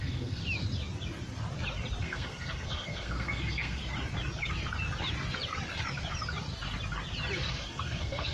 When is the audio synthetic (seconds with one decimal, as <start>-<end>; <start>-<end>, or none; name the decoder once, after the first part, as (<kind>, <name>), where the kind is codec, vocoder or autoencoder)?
0.0-0.4 (codec, SNAC); 2.0-3.8; 7.5-8.3